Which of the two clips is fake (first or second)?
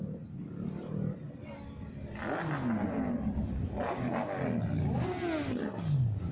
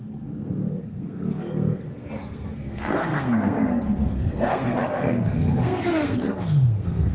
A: second